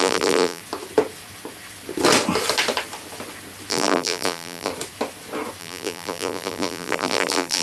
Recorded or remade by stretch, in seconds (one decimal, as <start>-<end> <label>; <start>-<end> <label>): 0.0-0.6 remade; 0.6-3.7 recorded; 3.7-4.7 remade; 4.7-5.6 recorded; 5.6-7.6 remade